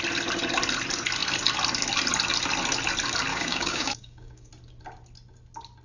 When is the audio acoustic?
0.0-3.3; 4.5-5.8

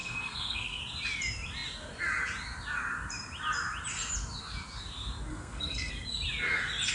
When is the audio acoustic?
0.8-5.3; 5.9-6.9